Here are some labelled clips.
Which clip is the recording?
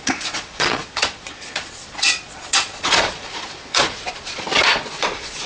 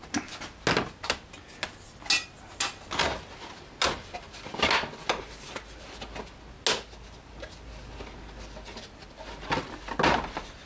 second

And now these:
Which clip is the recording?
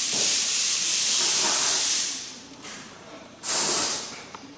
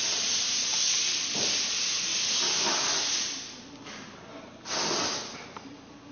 second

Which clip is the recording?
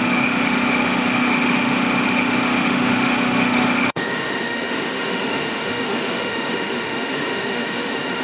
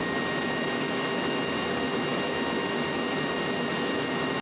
second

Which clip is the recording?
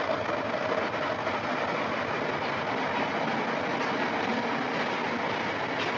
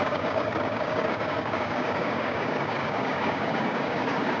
first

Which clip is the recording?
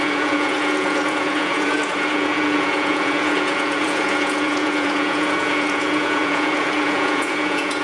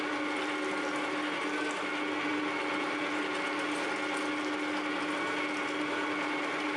second